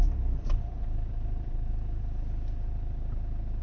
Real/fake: real